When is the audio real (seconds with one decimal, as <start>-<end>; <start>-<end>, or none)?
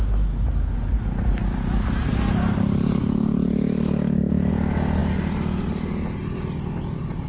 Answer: 0.0-7.3